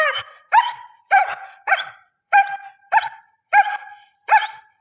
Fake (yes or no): yes